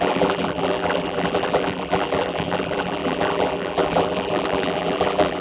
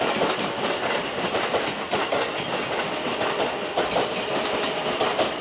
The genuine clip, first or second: second